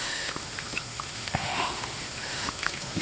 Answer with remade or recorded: remade